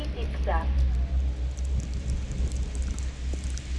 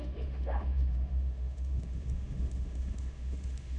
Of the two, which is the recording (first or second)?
first